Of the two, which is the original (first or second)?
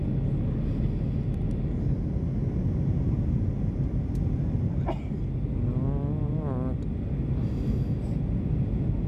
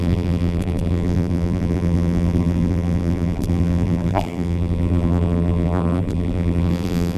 first